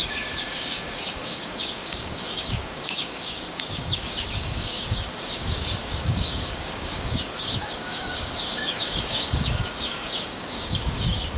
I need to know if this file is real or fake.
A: fake